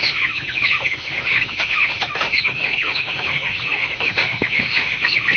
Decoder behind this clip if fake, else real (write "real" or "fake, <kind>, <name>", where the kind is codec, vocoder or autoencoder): fake, autoencoder, DAC-VAE